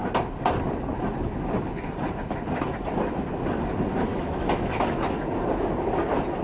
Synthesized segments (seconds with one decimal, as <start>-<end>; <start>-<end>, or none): 4.1-5.1

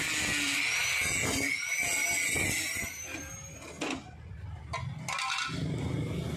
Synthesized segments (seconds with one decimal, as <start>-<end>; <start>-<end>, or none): none